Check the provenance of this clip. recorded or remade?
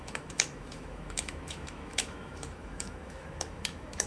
remade